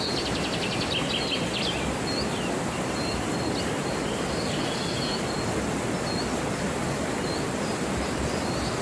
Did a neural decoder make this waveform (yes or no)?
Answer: no